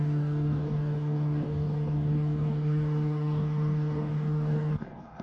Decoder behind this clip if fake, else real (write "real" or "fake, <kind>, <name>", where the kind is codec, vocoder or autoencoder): fake, codec, DAC